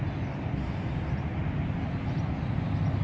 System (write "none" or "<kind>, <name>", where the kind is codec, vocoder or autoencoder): none